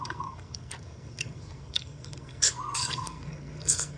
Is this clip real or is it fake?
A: fake